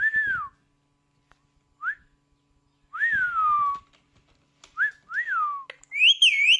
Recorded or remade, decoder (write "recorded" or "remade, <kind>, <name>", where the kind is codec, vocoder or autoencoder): recorded